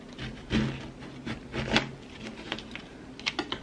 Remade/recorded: recorded